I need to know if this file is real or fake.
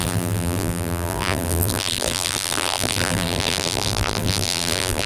fake